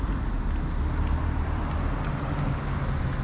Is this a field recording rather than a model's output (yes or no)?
yes